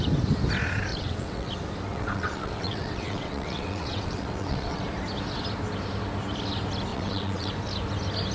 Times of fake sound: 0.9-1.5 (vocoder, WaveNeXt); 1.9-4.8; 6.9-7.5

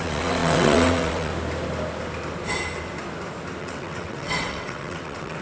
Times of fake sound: 0.0-1.3 (vocoder, WaveNeXt); 3.6-5.4

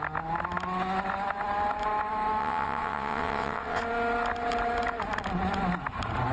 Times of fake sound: 2.4-3.8 (vocoder, WaveNeXt)

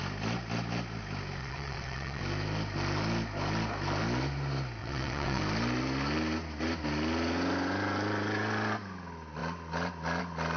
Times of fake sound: 1.4-2.2 (vocoder, WaveNeXt); 4.8-5.4

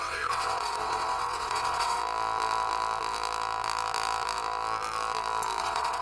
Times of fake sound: 0.0-2.0 (vocoder, WaveNeXt); 5.6-6.0